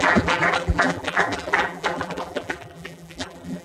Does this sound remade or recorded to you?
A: remade